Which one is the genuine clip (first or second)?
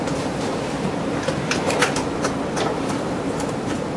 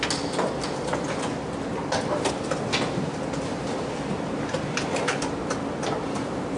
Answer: second